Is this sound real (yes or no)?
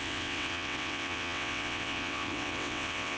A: no